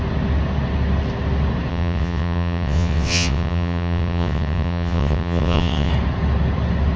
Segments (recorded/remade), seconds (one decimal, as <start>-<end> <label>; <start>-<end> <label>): 0.0-1.7 recorded; 1.7-5.9 remade; 5.9-7.0 recorded